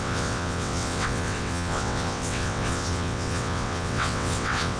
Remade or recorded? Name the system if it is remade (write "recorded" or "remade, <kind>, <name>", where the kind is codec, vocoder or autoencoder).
remade, vocoder, WaveNeXt